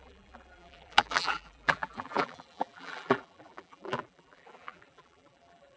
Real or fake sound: fake